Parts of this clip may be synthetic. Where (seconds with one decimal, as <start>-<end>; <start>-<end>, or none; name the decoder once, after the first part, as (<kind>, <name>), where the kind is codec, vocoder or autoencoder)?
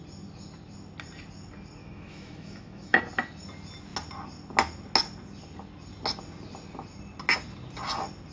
1.8-3.0 (autoencoder, DAC-VAE)